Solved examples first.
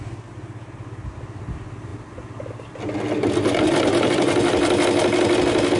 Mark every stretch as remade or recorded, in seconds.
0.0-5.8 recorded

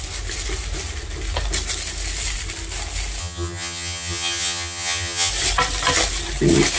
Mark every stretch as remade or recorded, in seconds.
0.0-3.2 recorded; 3.2-5.3 remade; 5.3-6.8 recorded

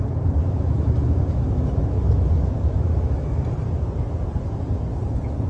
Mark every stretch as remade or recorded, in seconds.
0.0-0.4 recorded; 0.4-3.4 remade; 3.4-5.5 recorded